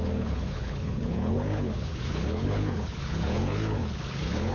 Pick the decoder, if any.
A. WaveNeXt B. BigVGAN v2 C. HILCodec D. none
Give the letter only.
C